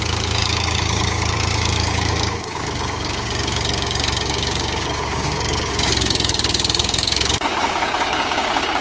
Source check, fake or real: fake